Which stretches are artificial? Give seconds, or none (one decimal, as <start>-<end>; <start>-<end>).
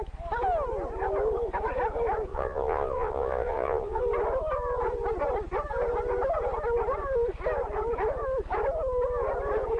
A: 2.3-4.0